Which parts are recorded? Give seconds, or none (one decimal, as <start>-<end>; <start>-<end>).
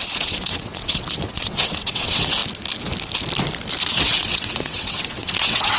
2.4-3.8